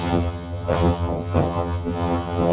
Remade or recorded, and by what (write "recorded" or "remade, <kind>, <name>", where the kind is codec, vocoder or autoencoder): remade, vocoder, HiFi-GAN